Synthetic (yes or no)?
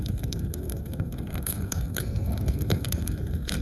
yes